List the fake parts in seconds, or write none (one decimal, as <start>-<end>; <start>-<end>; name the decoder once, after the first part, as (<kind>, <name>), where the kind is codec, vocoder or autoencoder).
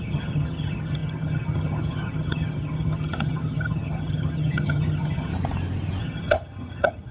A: 0.0-5.3 (vocoder, HiFi-GAN); 6.0-7.1